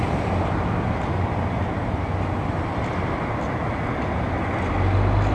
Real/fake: real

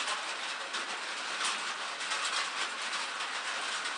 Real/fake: real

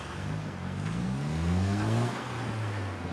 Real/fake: fake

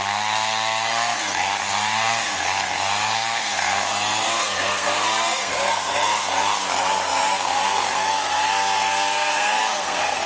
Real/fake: fake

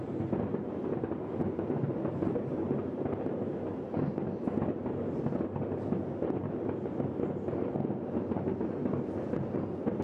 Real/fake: real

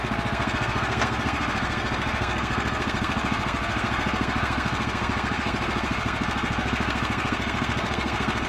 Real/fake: fake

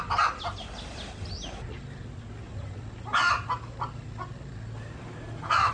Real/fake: real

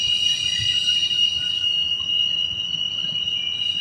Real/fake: real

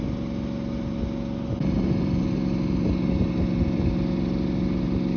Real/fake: real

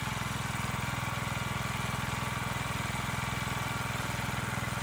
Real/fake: real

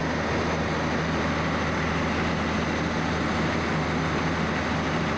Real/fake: real